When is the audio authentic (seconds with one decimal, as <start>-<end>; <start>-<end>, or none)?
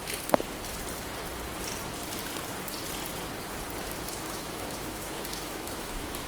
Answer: 0.0-3.8